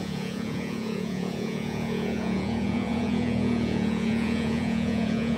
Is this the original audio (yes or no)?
no